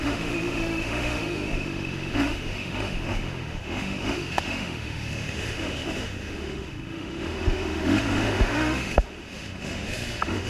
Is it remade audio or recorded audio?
remade